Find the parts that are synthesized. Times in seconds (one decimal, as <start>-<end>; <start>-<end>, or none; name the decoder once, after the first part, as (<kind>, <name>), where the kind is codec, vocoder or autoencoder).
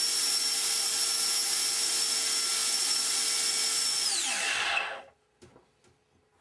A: none